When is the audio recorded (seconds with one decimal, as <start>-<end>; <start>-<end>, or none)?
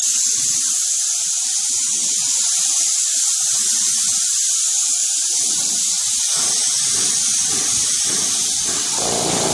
6.6-7.7